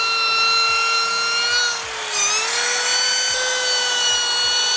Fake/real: real